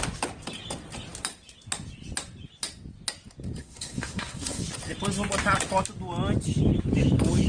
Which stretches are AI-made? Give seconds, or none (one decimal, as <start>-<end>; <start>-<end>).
3.6-4.6